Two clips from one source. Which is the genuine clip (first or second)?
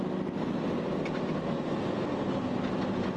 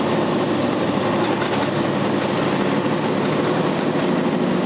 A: first